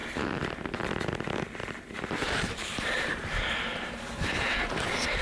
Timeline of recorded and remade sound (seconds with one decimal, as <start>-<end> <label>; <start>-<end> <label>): 0.0-0.5 remade; 0.5-1.6 recorded; 1.6-4.7 remade; 4.7-5.2 recorded